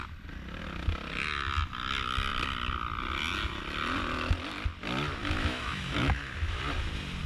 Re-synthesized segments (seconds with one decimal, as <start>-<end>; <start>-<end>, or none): 5.2-6.6